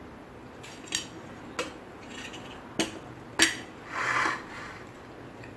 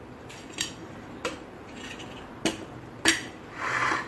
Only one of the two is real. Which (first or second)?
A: first